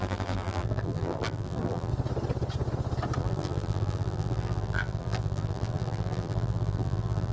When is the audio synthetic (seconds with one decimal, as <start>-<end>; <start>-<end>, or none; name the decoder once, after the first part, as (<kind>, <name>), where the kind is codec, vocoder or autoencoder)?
0.0-1.9 (vocoder, BigVGAN v2); 3.2-7.3